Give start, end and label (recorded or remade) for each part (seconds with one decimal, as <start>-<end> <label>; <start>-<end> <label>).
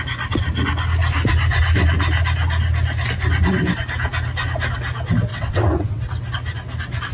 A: 0.0-5.3 recorded; 5.3-6.0 remade; 6.0-7.1 recorded